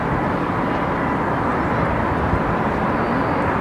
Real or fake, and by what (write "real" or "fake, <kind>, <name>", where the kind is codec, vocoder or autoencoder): real